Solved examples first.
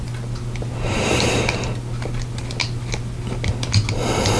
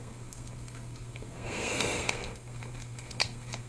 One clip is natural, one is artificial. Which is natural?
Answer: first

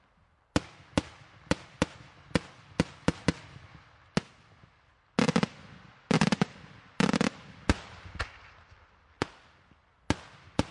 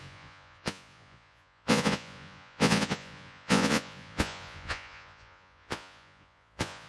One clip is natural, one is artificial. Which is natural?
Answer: first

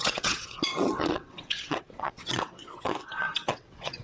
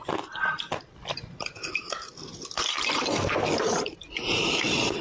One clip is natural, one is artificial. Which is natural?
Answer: second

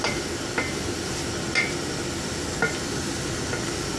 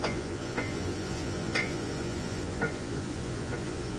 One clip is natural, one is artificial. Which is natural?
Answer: first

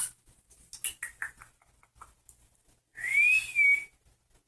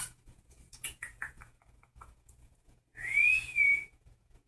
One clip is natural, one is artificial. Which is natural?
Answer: first